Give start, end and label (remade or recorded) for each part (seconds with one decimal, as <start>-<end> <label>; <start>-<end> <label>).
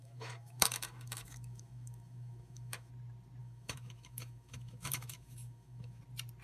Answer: 0.0-2.9 remade; 2.9-3.4 recorded; 3.4-6.0 remade; 6.0-6.4 recorded